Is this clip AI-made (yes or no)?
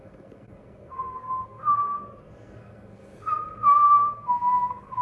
yes